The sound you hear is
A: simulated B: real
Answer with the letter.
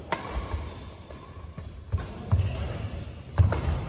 B